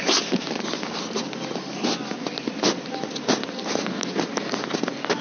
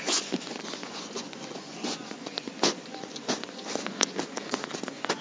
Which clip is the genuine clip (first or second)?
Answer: first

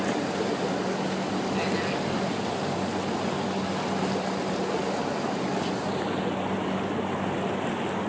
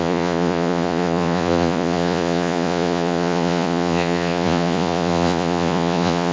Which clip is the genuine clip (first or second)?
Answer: first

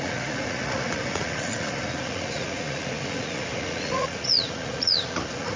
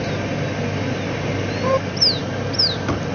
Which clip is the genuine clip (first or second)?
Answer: second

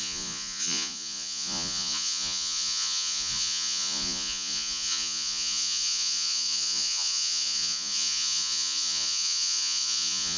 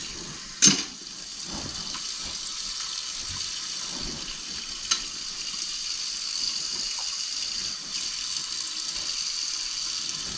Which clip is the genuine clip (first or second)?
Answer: second